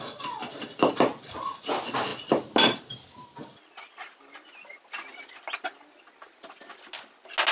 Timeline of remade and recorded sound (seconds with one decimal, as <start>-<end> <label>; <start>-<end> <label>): 0.0-7.5 recorded